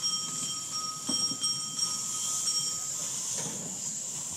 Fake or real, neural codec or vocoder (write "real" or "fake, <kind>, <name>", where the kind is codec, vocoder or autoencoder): real